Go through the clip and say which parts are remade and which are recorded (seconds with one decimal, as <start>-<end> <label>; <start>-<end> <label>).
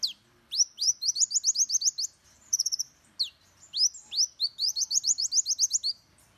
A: 0.0-2.2 recorded; 2.2-3.1 remade; 3.1-4.5 recorded; 4.5-5.2 remade; 5.2-6.4 recorded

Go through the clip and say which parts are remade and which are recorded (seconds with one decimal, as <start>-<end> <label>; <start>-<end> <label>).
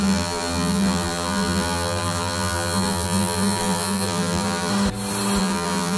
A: 0.0-4.7 remade; 4.7-5.4 recorded; 5.4-6.0 remade